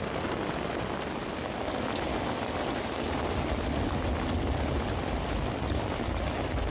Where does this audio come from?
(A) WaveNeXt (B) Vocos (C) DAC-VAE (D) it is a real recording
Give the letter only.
D